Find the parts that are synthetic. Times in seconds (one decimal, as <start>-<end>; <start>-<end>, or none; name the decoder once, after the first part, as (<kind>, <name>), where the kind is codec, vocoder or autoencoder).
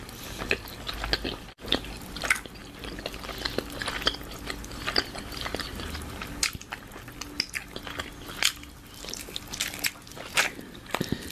none